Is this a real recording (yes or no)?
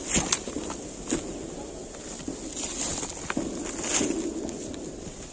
yes